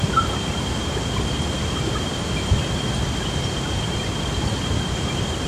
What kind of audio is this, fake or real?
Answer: real